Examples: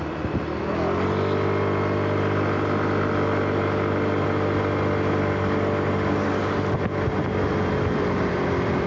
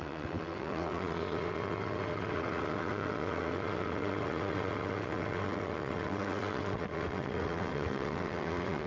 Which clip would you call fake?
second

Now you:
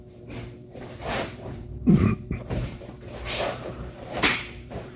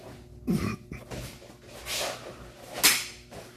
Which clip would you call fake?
first